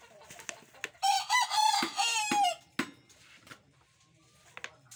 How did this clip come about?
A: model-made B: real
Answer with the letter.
B